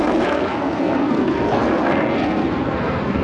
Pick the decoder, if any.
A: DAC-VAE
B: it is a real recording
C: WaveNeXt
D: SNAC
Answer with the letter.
D